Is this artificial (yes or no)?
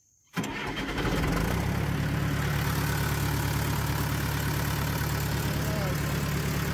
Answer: no